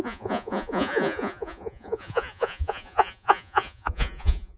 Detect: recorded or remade remade